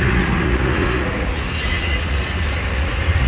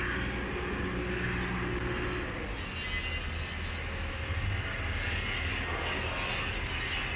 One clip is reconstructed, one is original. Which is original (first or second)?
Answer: second